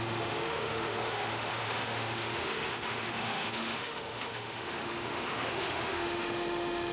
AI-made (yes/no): yes